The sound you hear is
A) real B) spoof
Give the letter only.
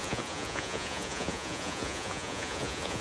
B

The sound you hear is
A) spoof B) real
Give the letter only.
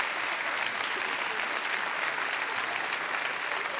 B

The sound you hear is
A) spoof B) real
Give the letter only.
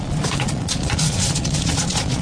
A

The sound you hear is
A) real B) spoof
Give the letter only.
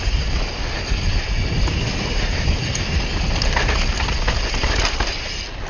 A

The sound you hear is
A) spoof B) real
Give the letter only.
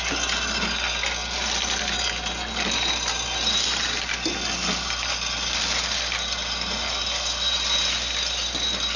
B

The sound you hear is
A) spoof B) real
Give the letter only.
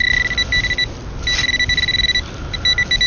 B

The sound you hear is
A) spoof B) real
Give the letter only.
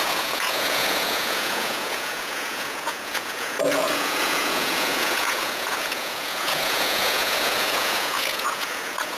A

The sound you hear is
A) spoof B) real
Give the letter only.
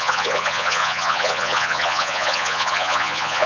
A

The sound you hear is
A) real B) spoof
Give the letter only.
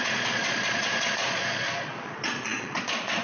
B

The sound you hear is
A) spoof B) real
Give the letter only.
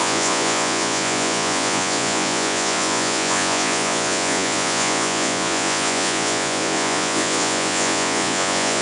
A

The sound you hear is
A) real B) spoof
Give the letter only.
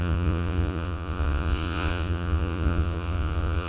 B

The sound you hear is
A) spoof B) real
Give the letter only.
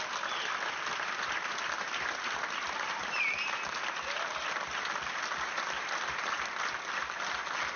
B